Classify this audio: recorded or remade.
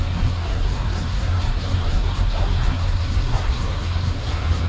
remade